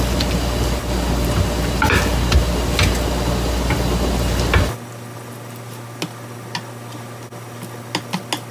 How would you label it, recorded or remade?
recorded